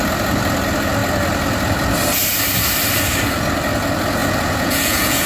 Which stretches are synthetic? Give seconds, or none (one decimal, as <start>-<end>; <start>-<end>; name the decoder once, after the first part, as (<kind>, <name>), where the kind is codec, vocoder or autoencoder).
4.2-5.3 (vocoder, Vocos)